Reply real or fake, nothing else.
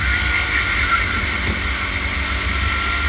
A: real